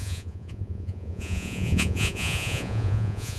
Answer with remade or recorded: remade